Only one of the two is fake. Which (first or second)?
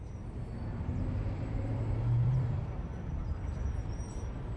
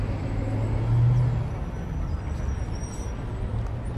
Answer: first